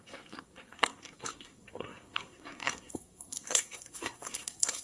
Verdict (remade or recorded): remade